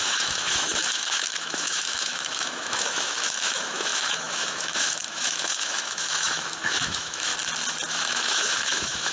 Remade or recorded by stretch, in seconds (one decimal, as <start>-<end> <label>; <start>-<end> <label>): 0.0-7.3 remade; 7.3-7.9 recorded; 7.9-9.1 remade